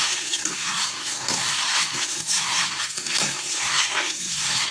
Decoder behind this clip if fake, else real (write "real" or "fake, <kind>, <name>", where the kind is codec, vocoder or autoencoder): fake, codec, SNAC